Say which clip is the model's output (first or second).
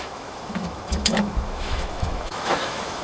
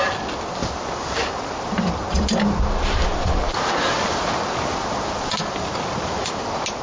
first